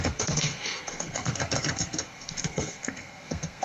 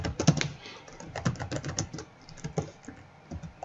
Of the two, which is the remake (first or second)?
first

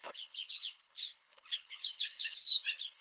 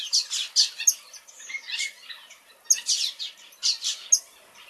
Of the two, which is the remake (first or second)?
first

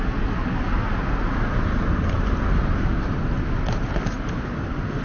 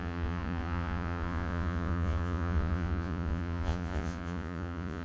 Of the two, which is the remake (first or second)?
second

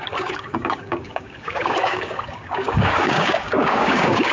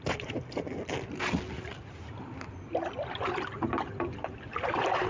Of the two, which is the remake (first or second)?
first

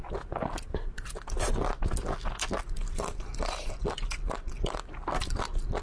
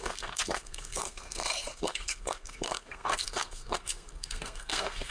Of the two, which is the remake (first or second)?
second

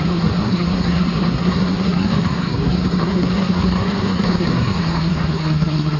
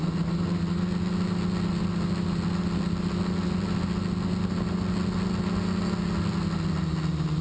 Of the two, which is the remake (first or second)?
first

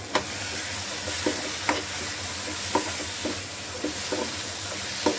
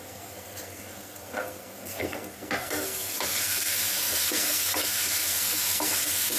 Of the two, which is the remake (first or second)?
second